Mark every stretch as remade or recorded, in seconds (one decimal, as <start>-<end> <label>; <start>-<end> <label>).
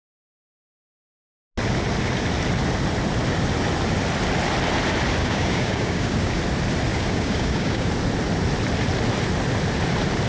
0.0-5.2 recorded; 5.2-6.4 remade; 6.4-6.9 recorded; 6.9-7.9 remade; 7.9-10.3 recorded